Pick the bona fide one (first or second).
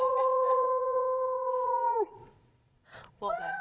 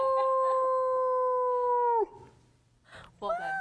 second